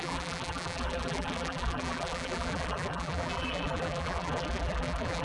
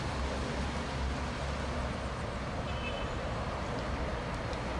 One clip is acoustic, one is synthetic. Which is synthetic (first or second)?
first